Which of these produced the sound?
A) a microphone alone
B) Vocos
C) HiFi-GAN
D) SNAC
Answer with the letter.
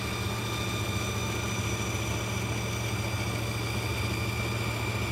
A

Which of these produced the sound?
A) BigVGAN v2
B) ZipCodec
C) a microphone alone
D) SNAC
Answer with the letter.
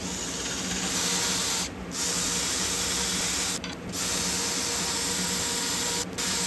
C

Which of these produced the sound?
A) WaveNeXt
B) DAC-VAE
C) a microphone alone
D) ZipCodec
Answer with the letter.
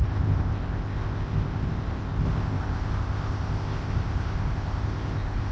D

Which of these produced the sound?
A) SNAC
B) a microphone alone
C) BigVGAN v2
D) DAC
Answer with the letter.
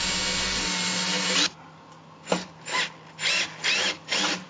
B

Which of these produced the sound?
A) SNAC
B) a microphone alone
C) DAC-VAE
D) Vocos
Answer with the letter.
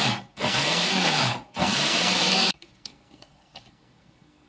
A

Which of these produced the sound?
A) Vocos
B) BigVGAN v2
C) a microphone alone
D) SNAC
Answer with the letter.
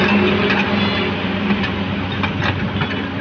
C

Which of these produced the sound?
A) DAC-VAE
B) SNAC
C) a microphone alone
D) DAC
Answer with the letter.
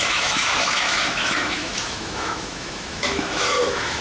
A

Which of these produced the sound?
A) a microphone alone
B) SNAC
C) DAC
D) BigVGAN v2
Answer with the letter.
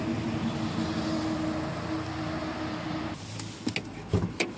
A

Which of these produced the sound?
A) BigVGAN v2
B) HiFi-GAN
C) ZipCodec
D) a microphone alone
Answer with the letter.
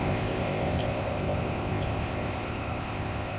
C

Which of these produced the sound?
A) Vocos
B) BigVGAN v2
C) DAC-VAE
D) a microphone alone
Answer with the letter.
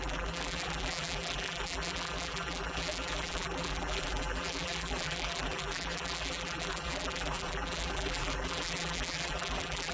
B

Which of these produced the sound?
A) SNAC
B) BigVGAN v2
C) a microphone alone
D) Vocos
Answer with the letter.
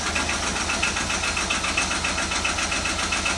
C